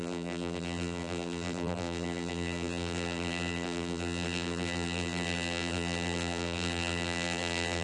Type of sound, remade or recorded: remade